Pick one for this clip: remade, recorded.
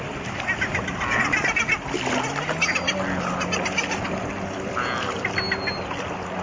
recorded